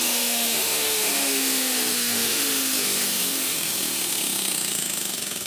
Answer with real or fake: fake